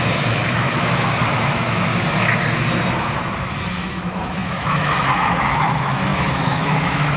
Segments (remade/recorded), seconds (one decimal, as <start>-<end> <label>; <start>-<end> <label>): 0.0-1.9 remade; 1.9-3.7 recorded; 3.7-7.2 remade

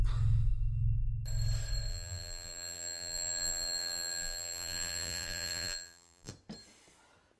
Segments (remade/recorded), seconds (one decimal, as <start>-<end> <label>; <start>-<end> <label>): 0.0-1.9 recorded; 1.9-6.3 remade; 6.3-7.4 recorded

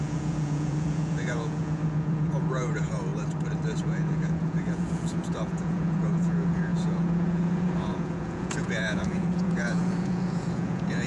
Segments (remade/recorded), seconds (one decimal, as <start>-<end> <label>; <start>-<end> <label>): 0.0-3.1 remade; 3.1-3.8 recorded; 3.8-11.1 remade

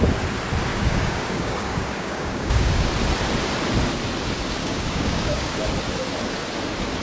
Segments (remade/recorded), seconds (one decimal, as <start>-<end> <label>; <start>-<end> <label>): 0.0-0.7 recorded; 0.7-2.9 remade; 2.9-4.6 recorded; 4.6-5.6 remade; 5.6-7.0 recorded

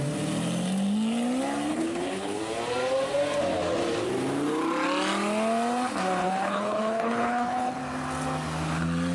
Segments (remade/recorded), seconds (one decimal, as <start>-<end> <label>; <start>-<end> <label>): 0.0-1.7 recorded; 1.7-2.4 remade; 2.4-6.2 recorded; 6.2-7.8 remade; 7.8-9.1 recorded

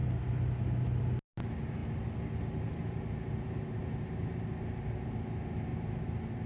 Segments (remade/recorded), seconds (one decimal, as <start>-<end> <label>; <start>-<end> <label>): 0.0-6.5 recorded

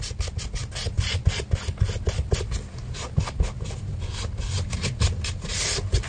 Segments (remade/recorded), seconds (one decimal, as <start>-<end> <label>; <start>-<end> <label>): 0.0-6.1 recorded

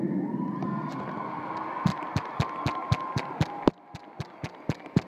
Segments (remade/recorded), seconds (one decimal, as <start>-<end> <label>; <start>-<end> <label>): 0.0-1.9 recorded; 1.9-2.4 remade; 2.4-5.1 recorded